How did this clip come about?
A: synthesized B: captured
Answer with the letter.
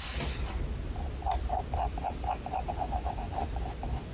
B